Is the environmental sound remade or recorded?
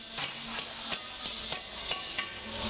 recorded